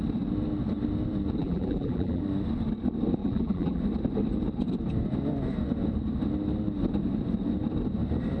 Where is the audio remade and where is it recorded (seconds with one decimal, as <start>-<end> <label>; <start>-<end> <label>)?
0.0-1.4 recorded; 1.4-2.2 remade; 2.2-3.2 recorded; 3.2-3.8 remade; 3.8-8.4 recorded